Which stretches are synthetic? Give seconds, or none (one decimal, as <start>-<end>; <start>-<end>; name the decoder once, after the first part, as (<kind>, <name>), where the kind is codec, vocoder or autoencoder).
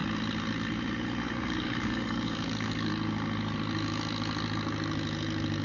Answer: 1.3-2.9 (codec, DAC)